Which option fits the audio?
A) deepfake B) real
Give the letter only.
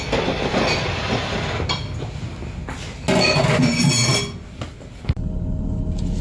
B